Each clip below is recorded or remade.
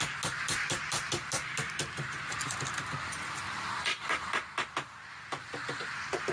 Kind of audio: recorded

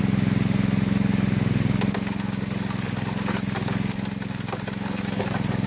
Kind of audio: recorded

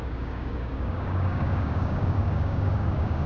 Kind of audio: remade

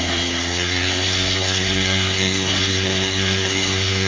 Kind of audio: remade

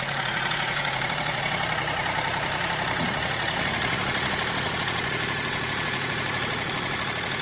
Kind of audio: remade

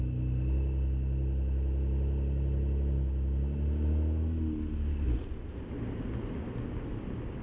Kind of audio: recorded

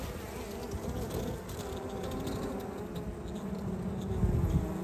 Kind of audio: recorded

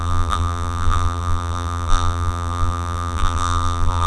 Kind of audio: remade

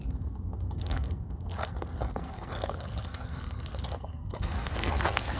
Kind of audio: remade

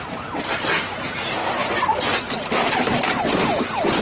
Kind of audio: recorded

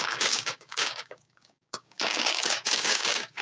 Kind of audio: remade